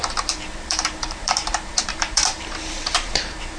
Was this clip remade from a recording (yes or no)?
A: yes